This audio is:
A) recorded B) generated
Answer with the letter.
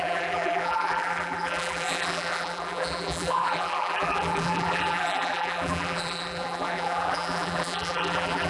B